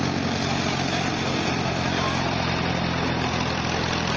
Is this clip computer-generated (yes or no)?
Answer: no